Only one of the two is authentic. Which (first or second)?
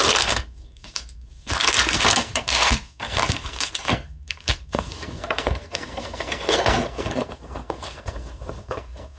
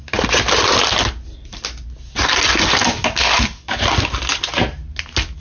second